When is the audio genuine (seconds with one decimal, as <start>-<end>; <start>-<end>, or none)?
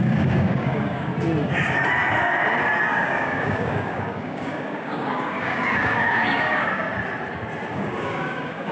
1.1-2.9; 6.9-7.7